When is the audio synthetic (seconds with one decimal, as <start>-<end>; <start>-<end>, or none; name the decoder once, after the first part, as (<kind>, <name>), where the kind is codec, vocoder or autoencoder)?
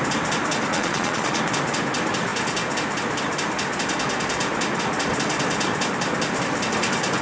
0.7-1.4 (vocoder, Vocos)